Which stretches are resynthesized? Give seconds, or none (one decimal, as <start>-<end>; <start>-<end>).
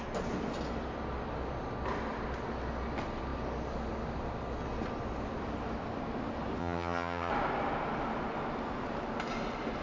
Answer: 6.6-7.3